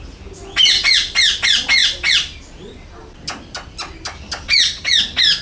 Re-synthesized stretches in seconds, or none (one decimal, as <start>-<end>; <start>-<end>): none